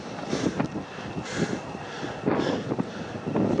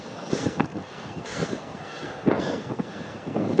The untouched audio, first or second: first